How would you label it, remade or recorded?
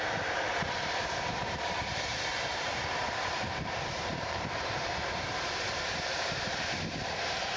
remade